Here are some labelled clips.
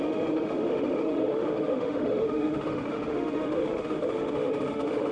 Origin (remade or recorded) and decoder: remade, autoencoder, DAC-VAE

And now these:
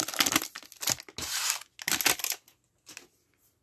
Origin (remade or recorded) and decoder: recorded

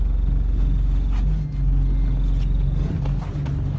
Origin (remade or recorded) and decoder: recorded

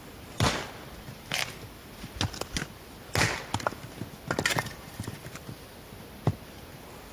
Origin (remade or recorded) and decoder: recorded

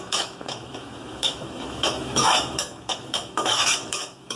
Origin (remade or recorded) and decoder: remade, autoencoder, DAC-VAE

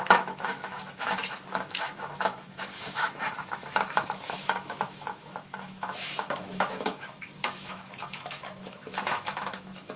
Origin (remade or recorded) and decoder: remade, autoencoder, DAC-VAE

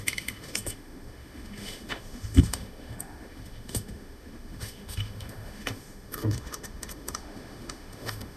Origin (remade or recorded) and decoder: remade, autoencoder, DAC-VAE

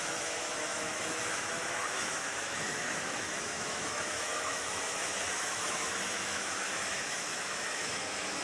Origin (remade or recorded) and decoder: remade, autoencoder, DAC-VAE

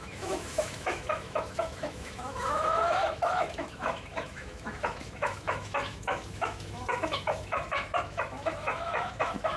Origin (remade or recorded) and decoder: remade, autoencoder, DAC-VAE